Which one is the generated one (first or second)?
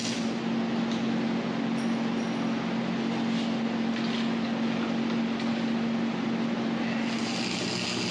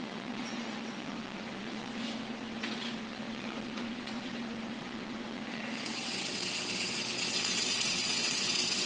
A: second